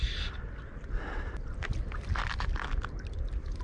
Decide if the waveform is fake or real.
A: real